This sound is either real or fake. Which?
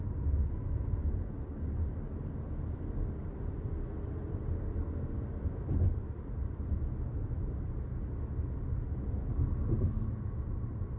real